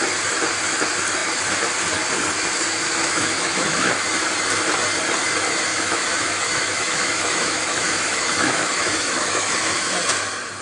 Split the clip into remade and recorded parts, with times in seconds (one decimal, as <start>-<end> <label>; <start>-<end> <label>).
0.0-2.8 recorded; 2.8-3.9 remade; 3.9-5.7 recorded; 5.7-9.9 remade; 9.9-10.6 recorded